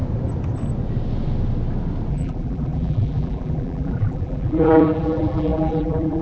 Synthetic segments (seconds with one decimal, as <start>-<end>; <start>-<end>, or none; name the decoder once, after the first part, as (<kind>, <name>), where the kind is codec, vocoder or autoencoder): 2.1-6.2 (vocoder, BigVGAN v2)

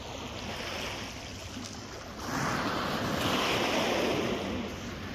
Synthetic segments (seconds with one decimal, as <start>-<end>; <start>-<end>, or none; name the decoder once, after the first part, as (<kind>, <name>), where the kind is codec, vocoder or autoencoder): none

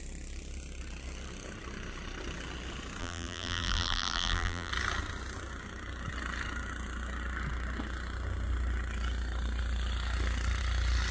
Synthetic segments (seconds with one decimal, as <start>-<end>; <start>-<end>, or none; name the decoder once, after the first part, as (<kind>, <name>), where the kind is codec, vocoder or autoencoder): 3.0-4.7 (vocoder, BigVGAN v2)

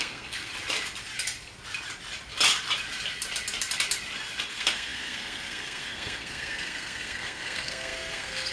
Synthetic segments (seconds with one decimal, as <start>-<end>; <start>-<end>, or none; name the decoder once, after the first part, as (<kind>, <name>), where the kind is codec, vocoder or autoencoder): 0.0-0.5 (codec, SNAC); 4.5-8.5

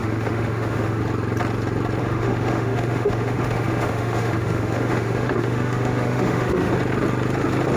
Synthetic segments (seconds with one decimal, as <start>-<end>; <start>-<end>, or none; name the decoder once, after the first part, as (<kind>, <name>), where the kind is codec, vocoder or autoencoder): 0.0-1.0 (autoencoder, DAC-VAE); 2.0-6.7

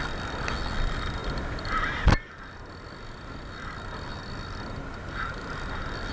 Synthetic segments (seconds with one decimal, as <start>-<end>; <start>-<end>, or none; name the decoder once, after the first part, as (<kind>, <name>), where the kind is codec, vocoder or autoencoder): none

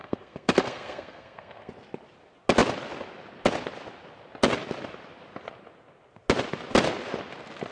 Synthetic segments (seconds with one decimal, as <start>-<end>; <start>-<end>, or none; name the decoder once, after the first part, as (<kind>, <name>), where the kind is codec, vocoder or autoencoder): 0.0-1.7 (codec, SNAC)